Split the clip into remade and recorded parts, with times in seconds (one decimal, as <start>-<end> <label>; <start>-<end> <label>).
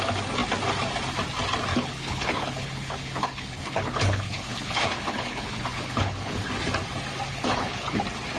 0.0-1.7 recorded; 1.7-6.5 remade; 6.5-7.3 recorded; 7.3-8.0 remade; 8.0-8.4 recorded